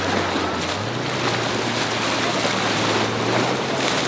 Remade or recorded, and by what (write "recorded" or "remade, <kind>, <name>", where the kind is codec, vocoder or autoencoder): recorded